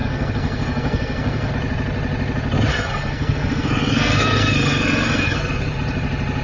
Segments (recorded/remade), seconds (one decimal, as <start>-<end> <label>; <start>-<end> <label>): 0.0-1.5 remade; 1.5-2.7 recorded; 2.7-5.4 remade; 5.4-6.4 recorded

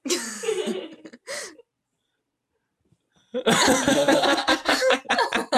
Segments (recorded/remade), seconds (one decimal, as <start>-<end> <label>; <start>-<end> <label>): 0.0-3.9 recorded; 3.9-5.0 remade; 5.0-5.6 recorded

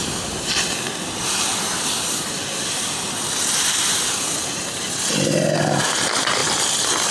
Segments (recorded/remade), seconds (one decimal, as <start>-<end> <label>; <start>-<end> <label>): 0.0-7.1 recorded

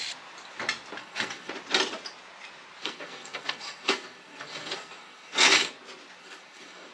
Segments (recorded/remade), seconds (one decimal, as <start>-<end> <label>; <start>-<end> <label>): 0.0-1.0 recorded; 1.0-1.5 remade; 1.5-2.8 recorded; 2.8-5.7 remade; 5.7-6.2 recorded; 6.2-6.9 remade